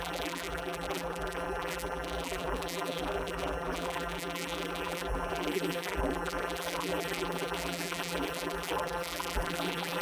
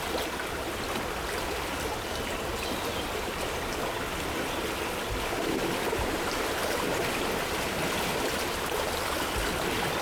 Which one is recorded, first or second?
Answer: second